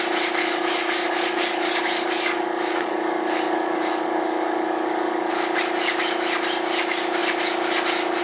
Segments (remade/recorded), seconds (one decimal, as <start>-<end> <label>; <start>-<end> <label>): 0.0-0.4 recorded; 0.4-5.3 remade; 5.3-8.2 recorded